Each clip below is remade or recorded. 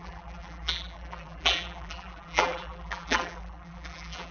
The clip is remade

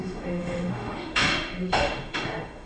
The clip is remade